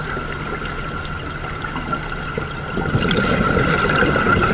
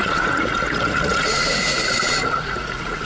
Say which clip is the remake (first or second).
second